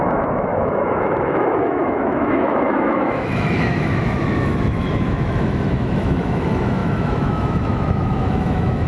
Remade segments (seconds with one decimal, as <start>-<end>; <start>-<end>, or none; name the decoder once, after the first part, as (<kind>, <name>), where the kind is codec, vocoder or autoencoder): 0.0-8.9 (autoencoder, DAC-VAE)